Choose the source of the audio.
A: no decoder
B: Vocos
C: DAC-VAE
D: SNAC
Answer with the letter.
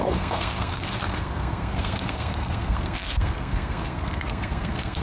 D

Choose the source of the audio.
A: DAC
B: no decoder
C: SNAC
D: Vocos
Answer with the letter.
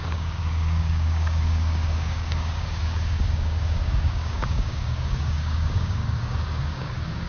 A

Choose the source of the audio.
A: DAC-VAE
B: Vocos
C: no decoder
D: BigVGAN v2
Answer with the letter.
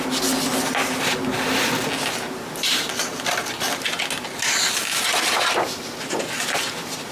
C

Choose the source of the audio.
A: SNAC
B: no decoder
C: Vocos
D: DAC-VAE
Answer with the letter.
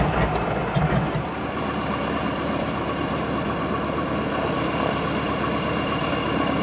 B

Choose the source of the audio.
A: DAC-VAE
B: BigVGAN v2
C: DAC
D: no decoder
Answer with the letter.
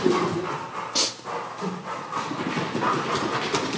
D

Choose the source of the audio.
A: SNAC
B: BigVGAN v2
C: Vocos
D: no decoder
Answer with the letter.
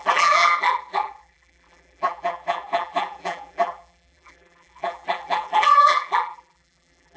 B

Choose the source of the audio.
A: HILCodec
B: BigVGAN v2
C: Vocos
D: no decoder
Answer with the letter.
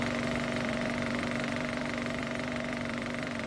B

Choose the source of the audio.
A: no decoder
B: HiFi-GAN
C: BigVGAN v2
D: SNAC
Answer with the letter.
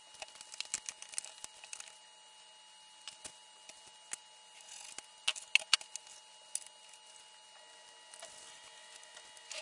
A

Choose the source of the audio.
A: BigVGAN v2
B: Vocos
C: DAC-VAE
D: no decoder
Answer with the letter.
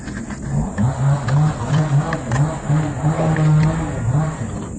D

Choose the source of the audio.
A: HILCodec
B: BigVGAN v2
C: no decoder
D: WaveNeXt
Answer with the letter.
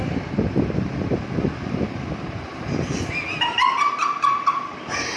C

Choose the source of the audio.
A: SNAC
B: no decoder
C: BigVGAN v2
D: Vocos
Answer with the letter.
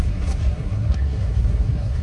A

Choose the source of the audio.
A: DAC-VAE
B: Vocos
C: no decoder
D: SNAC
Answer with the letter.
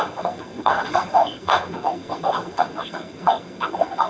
D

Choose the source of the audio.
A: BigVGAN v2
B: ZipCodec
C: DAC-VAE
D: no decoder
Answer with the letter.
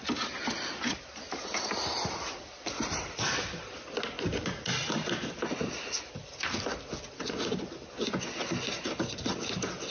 D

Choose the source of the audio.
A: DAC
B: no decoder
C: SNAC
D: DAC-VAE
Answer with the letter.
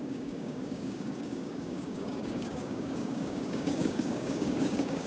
A